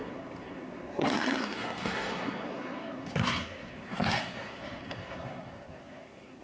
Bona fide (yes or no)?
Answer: no